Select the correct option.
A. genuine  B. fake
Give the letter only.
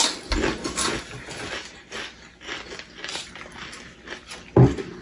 A